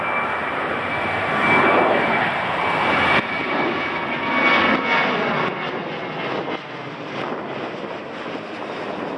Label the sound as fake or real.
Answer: real